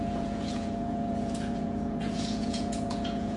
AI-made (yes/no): yes